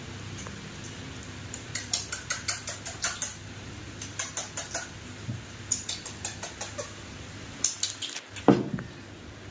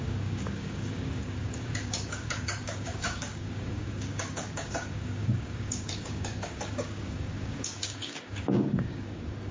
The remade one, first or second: second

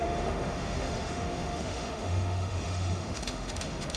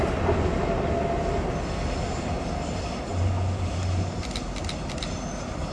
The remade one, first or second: first